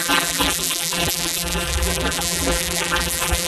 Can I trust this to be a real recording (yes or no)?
no